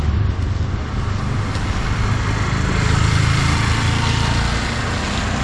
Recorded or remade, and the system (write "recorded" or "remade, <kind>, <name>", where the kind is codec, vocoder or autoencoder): recorded